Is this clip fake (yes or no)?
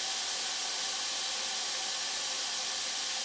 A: no